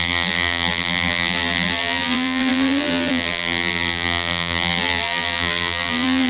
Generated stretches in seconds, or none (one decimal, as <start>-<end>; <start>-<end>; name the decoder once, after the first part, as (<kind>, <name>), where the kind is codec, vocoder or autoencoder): 0.0-6.3 (vocoder, BigVGAN v2)